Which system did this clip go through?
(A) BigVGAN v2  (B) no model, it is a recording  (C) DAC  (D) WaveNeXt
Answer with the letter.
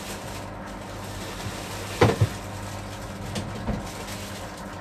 B